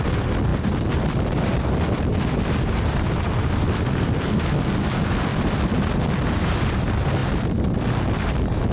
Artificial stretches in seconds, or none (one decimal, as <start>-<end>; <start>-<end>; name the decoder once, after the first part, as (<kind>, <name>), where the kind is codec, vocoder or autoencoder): 0.5-1.6 (vocoder, BigVGAN v2); 2.1-4.5; 5.3-6.2